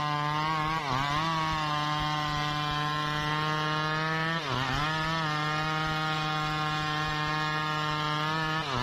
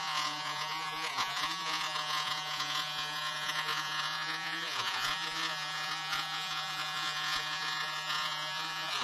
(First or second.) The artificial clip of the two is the second